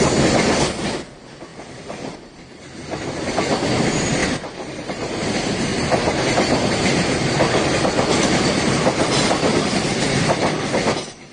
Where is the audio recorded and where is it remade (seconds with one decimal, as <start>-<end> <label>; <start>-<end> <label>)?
0.0-4.2 remade; 4.2-4.9 recorded; 4.9-5.7 remade; 5.7-9.7 recorded; 9.7-11.3 remade